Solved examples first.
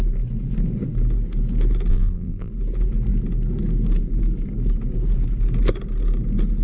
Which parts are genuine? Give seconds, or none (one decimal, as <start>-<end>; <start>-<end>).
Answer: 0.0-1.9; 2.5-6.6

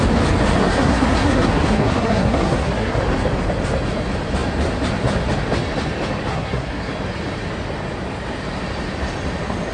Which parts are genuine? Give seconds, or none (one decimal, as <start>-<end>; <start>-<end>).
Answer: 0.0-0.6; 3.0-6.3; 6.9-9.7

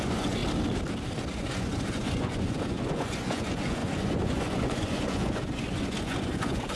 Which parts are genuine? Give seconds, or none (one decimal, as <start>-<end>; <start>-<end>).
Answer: 0.4-1.3